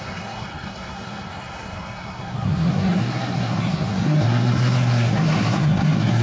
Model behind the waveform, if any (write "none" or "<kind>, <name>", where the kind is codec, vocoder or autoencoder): codec, SNAC